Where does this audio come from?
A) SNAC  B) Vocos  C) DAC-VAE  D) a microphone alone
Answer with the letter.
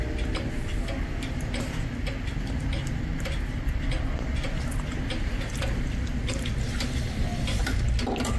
D